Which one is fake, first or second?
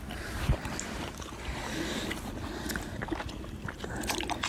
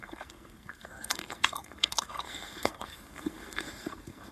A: second